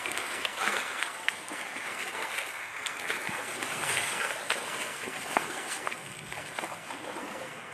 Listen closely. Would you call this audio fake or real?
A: fake